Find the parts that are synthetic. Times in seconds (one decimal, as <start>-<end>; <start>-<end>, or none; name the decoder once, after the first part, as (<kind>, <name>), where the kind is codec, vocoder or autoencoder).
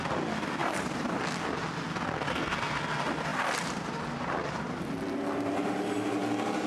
0.6-1.2 (vocoder, BigVGAN v2); 3.3-4.0